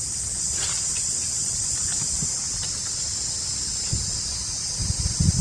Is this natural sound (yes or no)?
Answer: yes